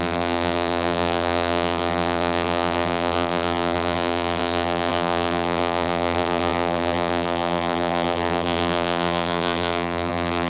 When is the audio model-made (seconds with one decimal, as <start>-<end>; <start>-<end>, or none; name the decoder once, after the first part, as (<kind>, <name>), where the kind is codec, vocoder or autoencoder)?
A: 0.0-10.5 (vocoder, BigVGAN v2)